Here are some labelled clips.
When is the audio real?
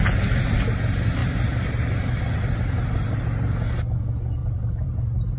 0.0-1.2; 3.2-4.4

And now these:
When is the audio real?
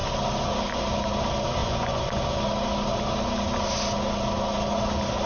0.0-1.6; 2.2-5.3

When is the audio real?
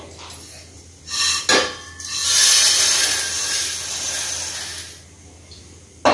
0.0-6.1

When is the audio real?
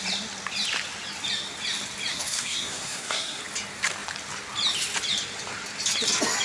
0.0-2.1; 3.4-6.4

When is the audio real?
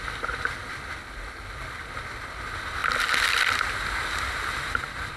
0.0-5.2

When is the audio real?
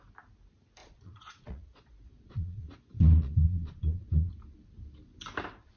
0.0-0.8; 4.3-5.8